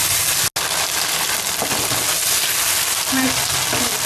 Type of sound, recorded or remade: recorded